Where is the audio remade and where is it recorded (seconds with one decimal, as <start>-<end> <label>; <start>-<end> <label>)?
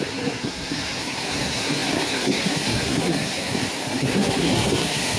0.0-5.2 remade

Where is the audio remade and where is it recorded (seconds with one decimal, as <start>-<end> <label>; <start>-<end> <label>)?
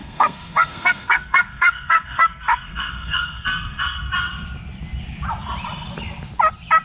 0.0-4.1 remade; 4.1-6.8 recorded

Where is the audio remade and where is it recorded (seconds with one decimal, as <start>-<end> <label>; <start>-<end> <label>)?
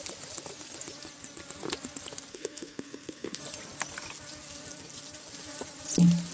0.0-2.3 recorded; 2.3-3.4 remade; 3.4-6.3 recorded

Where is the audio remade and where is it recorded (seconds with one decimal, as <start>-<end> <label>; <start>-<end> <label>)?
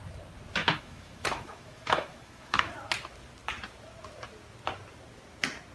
0.0-0.6 recorded; 0.6-2.7 remade; 2.7-5.7 recorded